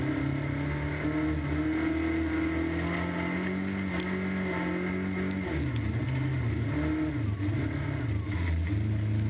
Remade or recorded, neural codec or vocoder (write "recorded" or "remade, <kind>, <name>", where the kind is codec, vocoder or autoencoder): recorded